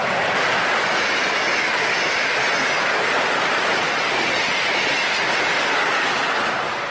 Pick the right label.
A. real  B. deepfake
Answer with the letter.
A